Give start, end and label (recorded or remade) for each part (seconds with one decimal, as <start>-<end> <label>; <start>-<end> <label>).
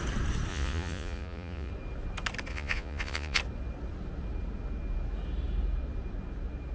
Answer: 0.0-0.5 recorded; 0.5-1.7 remade; 1.7-2.5 recorded; 2.5-3.4 remade; 3.4-6.7 recorded